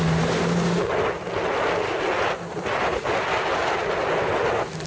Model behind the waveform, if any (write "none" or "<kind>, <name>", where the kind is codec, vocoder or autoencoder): none